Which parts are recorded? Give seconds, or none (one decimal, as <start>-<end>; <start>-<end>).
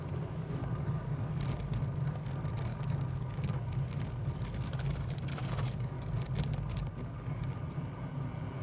0.0-0.6; 1.3-2.7; 3.6-5.3; 6.1-6.7; 7.4-8.6